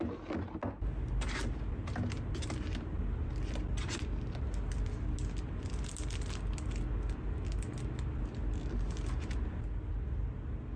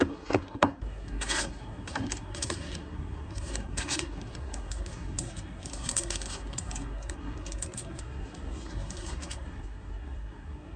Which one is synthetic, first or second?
second